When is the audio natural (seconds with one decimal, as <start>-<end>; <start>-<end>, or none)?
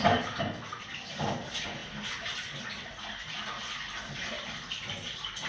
0.0-5.5